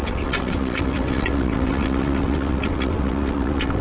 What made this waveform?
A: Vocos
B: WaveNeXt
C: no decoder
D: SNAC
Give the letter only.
B